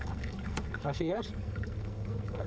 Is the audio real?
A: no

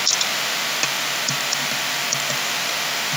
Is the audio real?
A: yes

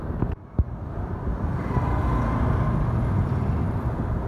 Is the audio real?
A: yes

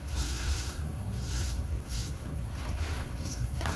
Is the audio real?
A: no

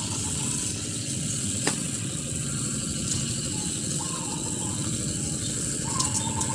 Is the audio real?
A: no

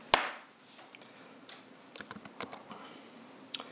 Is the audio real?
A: yes